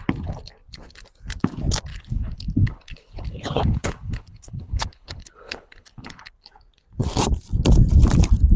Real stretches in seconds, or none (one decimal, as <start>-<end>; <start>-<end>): 0.0-1.9; 6.3-8.6